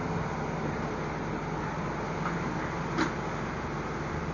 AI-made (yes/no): no